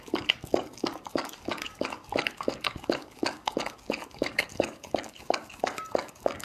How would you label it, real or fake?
fake